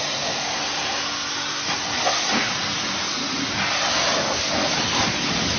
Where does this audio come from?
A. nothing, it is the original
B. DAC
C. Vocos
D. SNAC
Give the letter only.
A